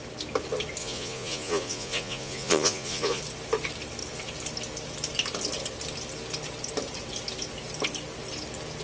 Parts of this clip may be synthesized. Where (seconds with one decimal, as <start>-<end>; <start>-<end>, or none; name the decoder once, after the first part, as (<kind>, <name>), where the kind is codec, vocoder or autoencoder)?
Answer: 0.8-3.2 (vocoder, Vocos)